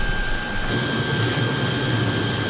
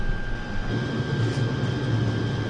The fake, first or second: first